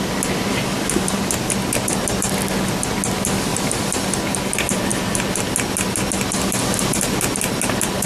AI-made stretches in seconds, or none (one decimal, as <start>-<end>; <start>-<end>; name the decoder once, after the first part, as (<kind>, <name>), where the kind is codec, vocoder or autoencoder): none